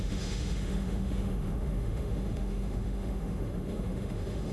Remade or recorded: remade